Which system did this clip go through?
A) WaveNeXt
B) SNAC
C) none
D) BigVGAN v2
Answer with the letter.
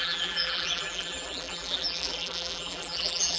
D